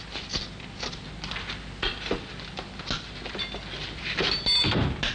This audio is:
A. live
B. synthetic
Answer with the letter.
A